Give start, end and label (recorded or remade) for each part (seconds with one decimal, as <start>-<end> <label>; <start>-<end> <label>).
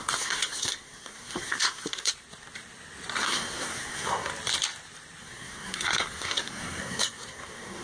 0.0-2.1 remade; 2.1-3.2 recorded; 3.2-4.3 remade; 4.3-5.2 recorded; 5.2-7.8 remade